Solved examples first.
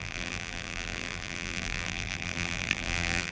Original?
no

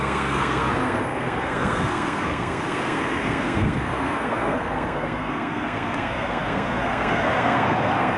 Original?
no